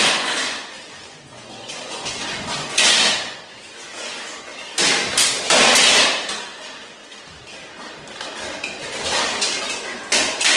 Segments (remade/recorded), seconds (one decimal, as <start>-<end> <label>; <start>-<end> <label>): 0.0-4.5 remade; 4.5-6.3 recorded; 6.3-7.0 remade; 7.0-9.6 recorded; 9.6-10.6 remade